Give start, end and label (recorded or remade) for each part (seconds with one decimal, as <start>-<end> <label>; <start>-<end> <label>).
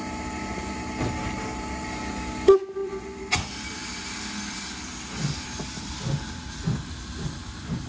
0.0-7.9 recorded